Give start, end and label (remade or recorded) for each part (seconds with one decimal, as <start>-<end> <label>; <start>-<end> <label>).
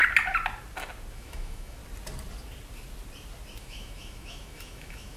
0.0-1.1 recorded; 1.1-1.8 remade; 1.8-3.6 recorded; 3.6-5.2 remade